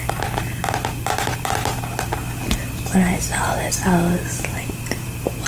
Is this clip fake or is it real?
real